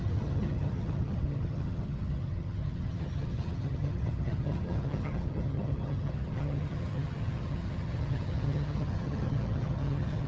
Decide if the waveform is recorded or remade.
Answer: remade